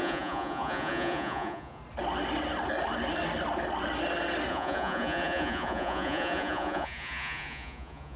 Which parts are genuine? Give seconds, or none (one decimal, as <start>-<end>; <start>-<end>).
1.8-4.5

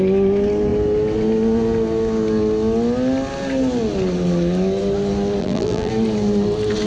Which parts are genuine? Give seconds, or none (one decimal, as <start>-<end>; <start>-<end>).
0.0-5.4; 5.9-6.9

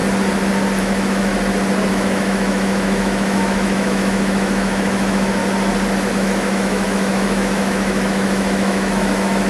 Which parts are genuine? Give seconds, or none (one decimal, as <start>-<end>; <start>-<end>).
0.0-0.8; 1.3-1.9; 5.4-6.1

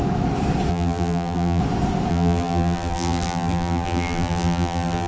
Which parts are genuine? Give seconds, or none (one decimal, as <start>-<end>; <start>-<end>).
0.0-0.7; 1.6-2.1